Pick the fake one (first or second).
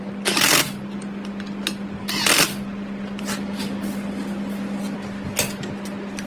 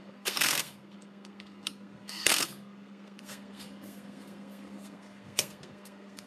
second